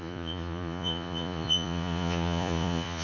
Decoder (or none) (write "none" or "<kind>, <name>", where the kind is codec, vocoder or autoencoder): vocoder, Vocos